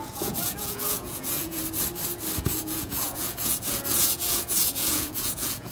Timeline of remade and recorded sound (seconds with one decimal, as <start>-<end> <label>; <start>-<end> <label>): 0.0-1.6 remade; 1.6-2.6 recorded; 2.6-5.7 remade